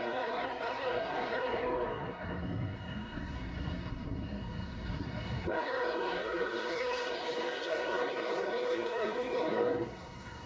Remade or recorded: remade